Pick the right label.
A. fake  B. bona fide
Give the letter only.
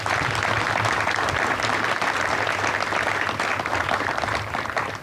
B